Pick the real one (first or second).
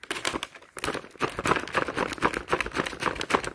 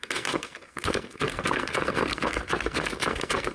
first